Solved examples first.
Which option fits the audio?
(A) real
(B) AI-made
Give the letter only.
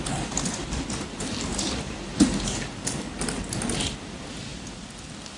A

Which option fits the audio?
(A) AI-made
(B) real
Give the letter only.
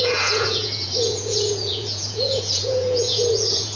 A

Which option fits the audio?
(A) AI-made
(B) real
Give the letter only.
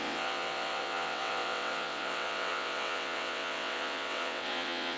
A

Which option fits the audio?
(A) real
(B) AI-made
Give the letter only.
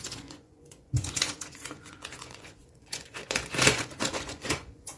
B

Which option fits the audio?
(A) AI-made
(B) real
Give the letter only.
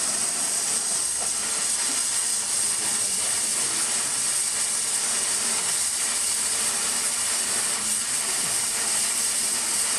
B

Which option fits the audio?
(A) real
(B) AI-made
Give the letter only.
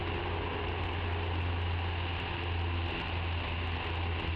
A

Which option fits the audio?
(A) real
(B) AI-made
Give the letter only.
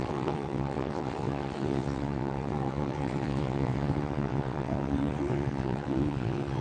B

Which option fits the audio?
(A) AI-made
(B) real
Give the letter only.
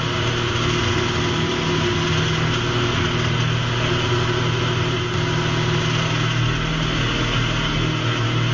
B